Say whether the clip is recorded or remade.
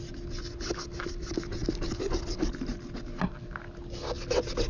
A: recorded